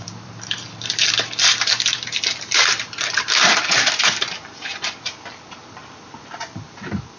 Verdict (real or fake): fake